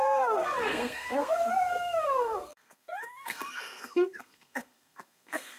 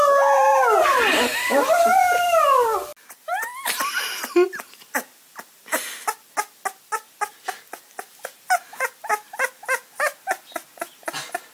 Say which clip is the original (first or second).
second